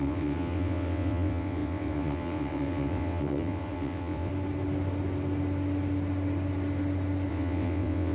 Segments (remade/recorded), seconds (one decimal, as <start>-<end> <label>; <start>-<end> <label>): 0.0-4.3 remade; 4.3-7.3 recorded; 7.3-8.1 remade